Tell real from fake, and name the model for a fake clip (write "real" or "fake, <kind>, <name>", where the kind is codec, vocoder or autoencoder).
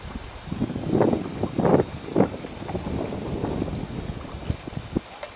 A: real